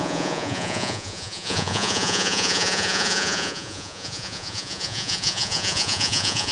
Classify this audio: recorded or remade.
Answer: remade